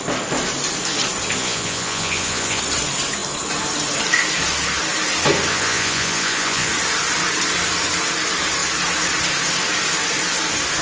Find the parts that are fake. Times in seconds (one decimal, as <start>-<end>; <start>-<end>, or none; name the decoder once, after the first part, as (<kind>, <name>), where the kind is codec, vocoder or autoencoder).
1.4-2.6 (vocoder, Vocos); 5.5-6.7